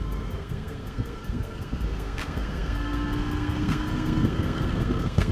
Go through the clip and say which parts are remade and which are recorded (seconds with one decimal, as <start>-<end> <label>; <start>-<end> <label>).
0.0-5.3 remade